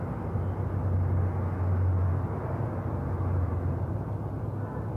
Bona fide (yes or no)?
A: yes